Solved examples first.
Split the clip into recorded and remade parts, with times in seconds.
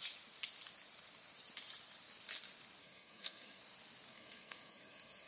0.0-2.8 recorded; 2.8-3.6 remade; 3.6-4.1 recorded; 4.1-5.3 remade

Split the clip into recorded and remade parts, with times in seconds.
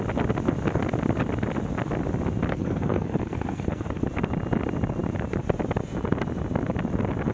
0.0-2.5 recorded; 2.5-4.0 remade; 4.0-7.3 recorded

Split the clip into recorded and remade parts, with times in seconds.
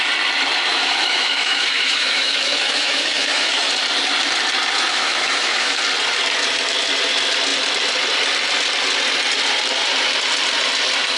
0.0-0.7 recorded; 0.7-3.7 remade; 3.7-4.9 recorded; 4.9-5.8 remade; 5.8-11.2 recorded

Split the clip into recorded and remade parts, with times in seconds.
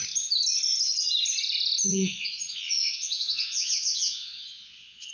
0.0-1.9 recorded; 1.9-5.1 remade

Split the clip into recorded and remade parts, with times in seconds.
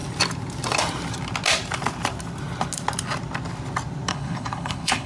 0.0-4.1 recorded; 4.1-5.1 remade